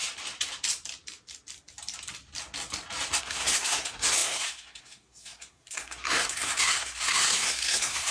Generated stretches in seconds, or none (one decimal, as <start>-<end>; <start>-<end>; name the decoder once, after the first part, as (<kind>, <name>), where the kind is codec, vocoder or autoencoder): 3.2-8.1 (codec, SNAC)